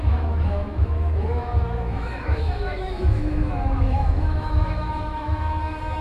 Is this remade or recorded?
remade